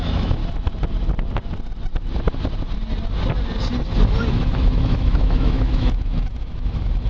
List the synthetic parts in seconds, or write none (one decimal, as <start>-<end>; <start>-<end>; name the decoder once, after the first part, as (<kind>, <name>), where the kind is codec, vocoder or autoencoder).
0.0-0.4 (autoencoder, DAC-VAE); 4.3-7.1